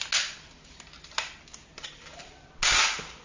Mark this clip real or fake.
real